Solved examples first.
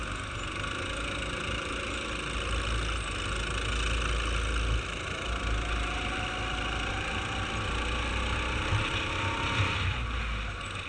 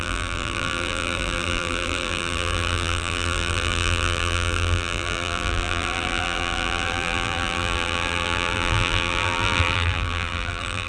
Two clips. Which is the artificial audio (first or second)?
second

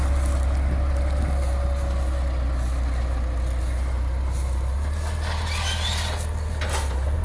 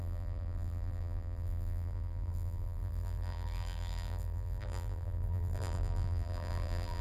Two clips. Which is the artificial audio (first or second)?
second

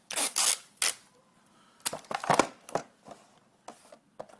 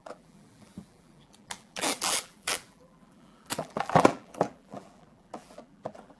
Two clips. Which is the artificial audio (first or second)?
second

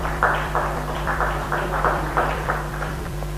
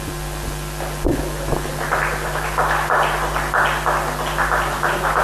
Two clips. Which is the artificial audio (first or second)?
first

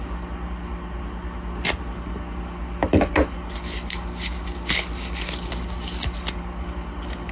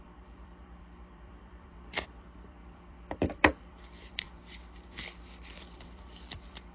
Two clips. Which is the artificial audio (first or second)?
second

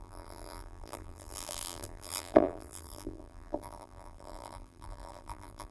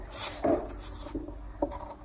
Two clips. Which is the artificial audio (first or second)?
first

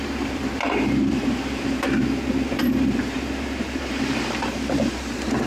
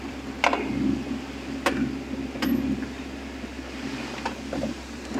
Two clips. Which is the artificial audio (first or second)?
first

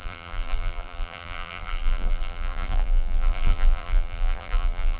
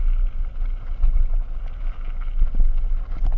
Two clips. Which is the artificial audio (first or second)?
first